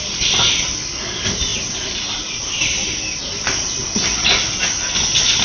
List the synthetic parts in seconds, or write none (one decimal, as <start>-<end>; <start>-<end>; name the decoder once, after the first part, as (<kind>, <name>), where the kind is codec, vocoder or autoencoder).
none